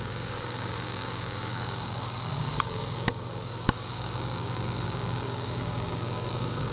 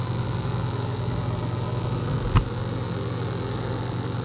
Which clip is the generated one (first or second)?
first